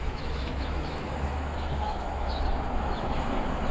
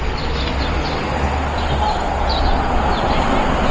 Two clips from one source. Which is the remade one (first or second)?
first